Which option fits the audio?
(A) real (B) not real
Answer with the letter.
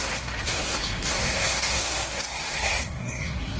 B